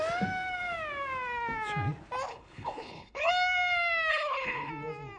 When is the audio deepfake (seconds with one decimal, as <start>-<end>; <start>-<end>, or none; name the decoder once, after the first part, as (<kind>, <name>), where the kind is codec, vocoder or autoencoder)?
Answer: 2.3-3.3 (codec, HILCodec); 4.1-4.7